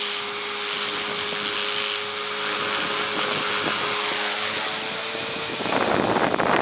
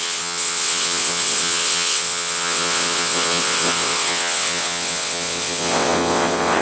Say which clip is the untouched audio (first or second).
first